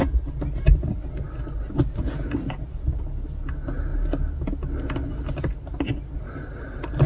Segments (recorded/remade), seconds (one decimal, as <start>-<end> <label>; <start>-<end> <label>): 0.0-7.1 recorded